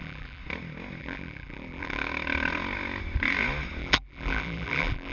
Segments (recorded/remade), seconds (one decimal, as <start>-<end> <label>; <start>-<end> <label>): 0.0-0.4 remade; 0.4-1.0 recorded; 1.0-2.1 remade; 2.1-3.8 recorded; 3.8-5.1 remade